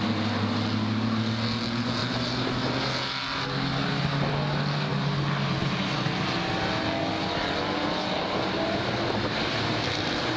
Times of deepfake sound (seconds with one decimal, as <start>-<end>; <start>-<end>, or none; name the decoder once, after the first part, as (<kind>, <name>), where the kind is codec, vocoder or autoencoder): none